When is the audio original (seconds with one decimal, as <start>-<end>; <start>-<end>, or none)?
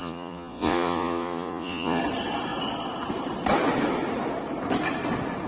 2.0-5.5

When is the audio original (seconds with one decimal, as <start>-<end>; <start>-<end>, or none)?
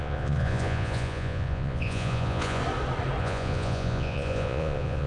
2.6-3.2